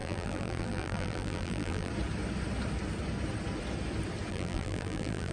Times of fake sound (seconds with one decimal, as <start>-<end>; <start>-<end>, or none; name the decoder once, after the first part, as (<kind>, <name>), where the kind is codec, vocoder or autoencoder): 0.0-1.9 (vocoder, BigVGAN v2); 4.3-5.3